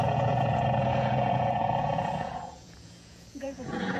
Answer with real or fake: fake